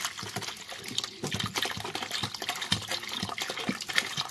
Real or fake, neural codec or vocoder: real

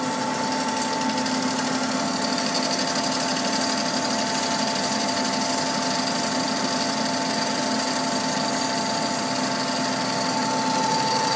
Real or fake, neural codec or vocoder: real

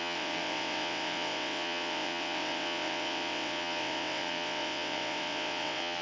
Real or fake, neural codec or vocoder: fake, vocoder, WaveNeXt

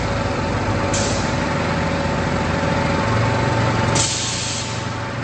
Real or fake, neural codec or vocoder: real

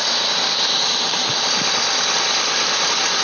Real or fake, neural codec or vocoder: real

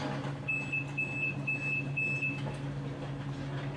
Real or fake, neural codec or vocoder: real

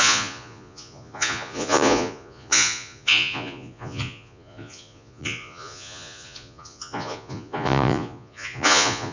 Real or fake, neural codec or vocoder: fake, vocoder, Vocos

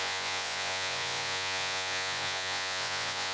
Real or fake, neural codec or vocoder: fake, vocoder, Vocos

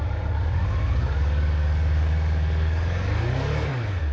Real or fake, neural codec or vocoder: fake, codec, DAC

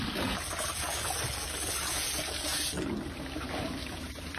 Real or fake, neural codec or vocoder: real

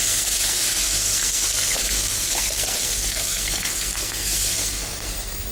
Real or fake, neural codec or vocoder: fake, codec, SNAC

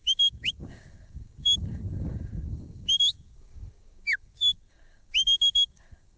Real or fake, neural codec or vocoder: fake, codec, DAC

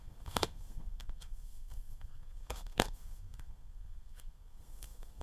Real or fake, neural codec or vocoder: fake, codec, SNAC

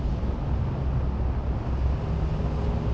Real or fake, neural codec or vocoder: real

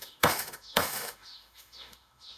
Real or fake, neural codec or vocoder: fake, autoencoder, DAC-VAE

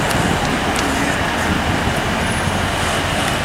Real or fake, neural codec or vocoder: real